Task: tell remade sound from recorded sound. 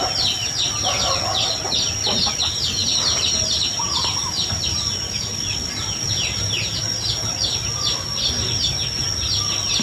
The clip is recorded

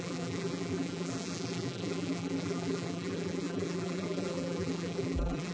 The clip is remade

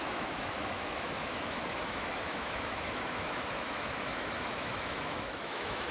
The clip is remade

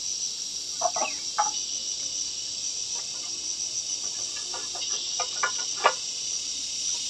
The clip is recorded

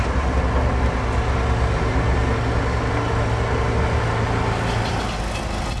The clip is recorded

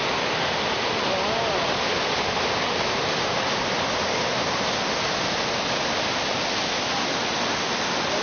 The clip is recorded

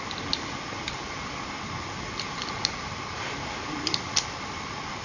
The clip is recorded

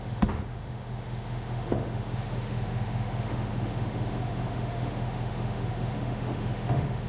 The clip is remade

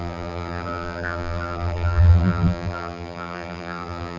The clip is remade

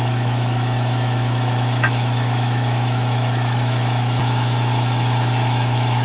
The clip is remade